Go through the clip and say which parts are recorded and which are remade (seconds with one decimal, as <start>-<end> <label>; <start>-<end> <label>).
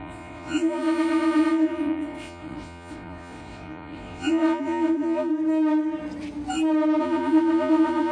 0.0-5.3 remade; 5.3-7.0 recorded; 7.0-8.1 remade